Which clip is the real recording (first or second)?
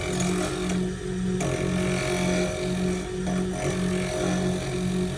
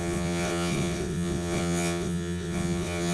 first